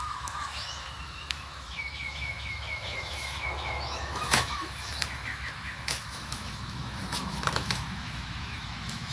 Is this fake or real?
fake